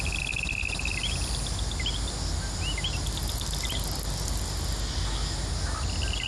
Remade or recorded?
recorded